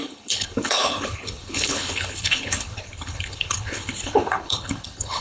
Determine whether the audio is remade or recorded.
remade